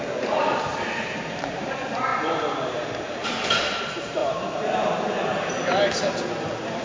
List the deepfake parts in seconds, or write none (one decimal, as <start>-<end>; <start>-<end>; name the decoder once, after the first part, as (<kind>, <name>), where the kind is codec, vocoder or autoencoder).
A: 0.0-4.2 (vocoder, BigVGAN v2); 5.5-6.8